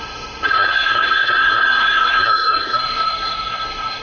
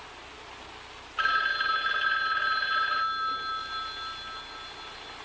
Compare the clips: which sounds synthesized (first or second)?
first